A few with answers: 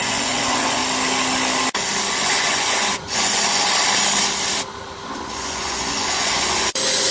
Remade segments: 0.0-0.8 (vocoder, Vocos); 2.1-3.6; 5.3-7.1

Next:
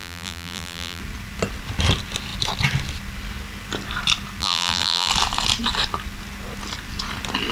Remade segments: 0.0-1.0 (vocoder, BigVGAN v2); 4.4-5.1

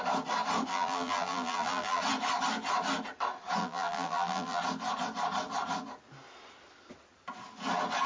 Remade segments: 0.7-2.0 (vocoder, BigVGAN v2); 3.6-4.6

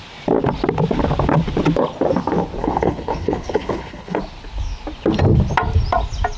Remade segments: 2.6-4.2 (codec, HILCodec)

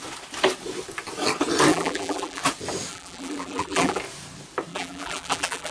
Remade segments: 1.7-2.4 (vocoder, BigVGAN v2); 2.9-4.0; 4.7-5.7